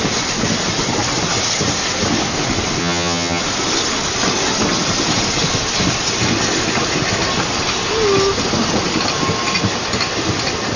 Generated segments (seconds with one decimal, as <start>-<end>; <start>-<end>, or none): 2.8-3.4